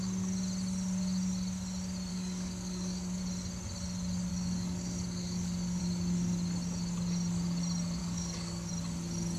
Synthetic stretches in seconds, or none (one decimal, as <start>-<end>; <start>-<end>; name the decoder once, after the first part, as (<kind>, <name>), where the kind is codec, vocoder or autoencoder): 2.1-3.2 (codec, DAC); 4.3-5.8; 8.0-8.7